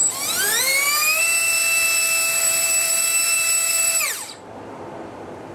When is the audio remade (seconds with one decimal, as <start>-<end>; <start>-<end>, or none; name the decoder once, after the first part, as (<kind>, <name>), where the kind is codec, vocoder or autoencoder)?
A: 0.6-5.5 (vocoder, BigVGAN v2)